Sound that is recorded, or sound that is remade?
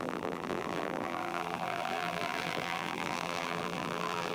remade